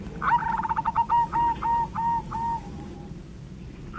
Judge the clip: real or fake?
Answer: real